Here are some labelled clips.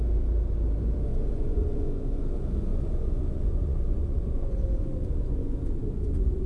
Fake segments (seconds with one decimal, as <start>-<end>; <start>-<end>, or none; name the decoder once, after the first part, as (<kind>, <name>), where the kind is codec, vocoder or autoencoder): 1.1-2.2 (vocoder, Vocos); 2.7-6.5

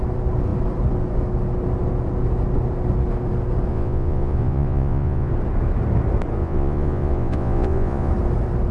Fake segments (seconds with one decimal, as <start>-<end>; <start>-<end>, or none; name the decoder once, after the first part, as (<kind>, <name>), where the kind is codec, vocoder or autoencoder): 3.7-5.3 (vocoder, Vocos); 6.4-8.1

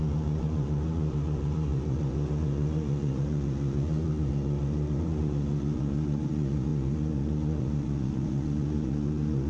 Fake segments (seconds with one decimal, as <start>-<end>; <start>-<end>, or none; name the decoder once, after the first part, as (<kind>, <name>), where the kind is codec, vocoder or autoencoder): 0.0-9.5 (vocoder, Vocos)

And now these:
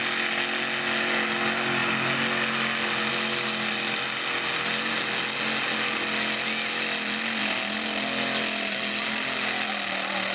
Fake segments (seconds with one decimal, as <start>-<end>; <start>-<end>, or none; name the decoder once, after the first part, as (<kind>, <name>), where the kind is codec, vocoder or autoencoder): none